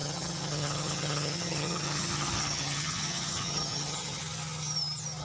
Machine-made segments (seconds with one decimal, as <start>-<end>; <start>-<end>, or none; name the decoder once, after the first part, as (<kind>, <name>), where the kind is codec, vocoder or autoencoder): 0.0-4.2 (vocoder, HiFi-GAN)